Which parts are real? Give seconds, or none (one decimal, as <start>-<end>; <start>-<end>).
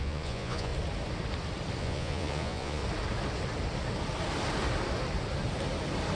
0.7-1.8; 2.8-6.2